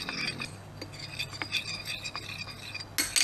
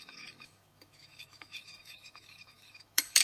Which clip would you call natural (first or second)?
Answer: first